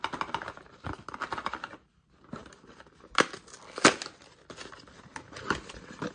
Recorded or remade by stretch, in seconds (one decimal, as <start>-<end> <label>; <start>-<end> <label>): 0.0-6.1 recorded